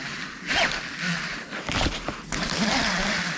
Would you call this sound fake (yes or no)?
no